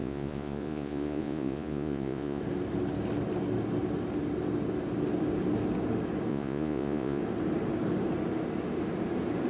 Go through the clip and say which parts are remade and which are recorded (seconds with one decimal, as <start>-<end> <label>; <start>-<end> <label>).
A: 0.0-2.4 remade; 2.4-6.3 recorded; 6.3-7.2 remade; 7.2-9.5 recorded